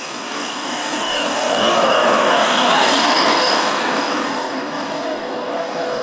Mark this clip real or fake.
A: fake